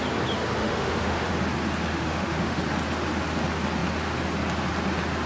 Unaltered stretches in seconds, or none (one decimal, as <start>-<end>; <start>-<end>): 0.0-0.6; 1.3-1.9; 2.6-5.3